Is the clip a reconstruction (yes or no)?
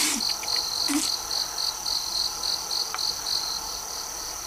no